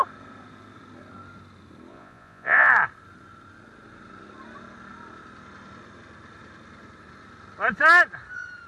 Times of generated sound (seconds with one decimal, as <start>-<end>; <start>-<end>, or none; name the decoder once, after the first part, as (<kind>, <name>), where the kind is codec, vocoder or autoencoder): 1.9-2.7 (vocoder, Vocos)